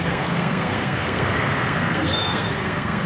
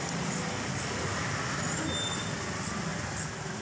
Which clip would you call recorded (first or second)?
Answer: second